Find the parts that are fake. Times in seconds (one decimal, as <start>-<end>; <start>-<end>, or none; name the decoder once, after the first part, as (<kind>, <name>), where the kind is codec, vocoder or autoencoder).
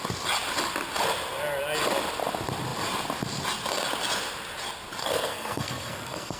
5.0-6.4 (codec, SNAC)